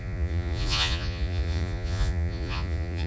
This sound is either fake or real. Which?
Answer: fake